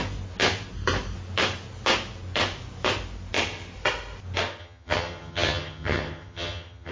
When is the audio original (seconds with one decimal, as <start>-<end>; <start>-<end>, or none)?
0.0-4.6